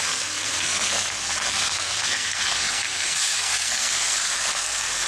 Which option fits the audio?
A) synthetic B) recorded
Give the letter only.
A